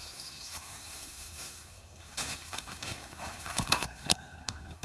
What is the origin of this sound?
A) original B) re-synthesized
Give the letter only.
B